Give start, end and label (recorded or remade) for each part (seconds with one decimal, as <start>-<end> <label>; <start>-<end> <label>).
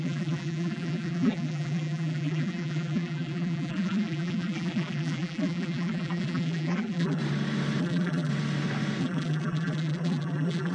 0.0-7.2 remade; 7.2-7.8 recorded; 7.8-8.3 remade; 8.3-9.0 recorded; 9.0-10.7 remade